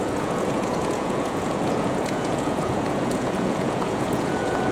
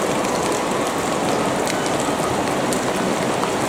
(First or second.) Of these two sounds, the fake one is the first